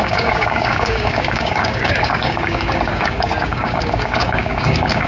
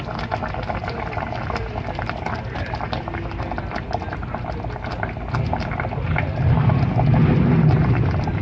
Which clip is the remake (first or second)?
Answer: first